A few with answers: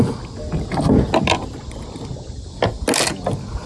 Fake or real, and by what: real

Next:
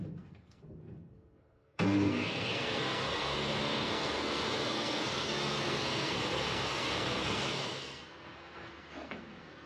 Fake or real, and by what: fake, codec, SNAC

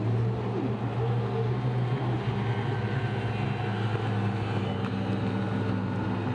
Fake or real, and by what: real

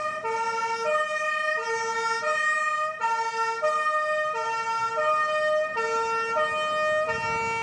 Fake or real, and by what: real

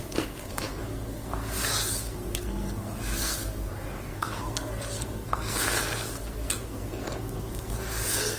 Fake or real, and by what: fake, codec, SNAC